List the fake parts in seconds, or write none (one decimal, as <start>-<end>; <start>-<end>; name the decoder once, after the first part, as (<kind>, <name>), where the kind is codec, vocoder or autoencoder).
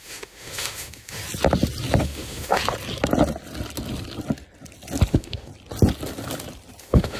0.0-1.2 (autoencoder, DAC-VAE); 2.0-2.6; 5.1-5.5; 6.8-7.2